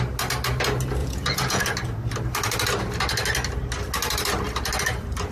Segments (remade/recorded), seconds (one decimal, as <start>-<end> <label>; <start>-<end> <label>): 0.0-1.0 recorded; 1.0-1.6 remade; 1.6-5.3 recorded